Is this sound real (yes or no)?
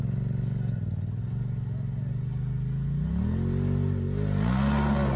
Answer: yes